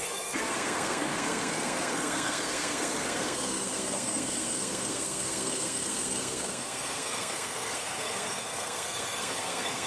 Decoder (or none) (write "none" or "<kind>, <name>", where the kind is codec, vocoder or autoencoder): codec, SNAC